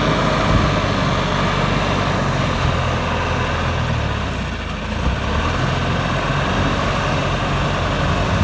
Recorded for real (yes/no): yes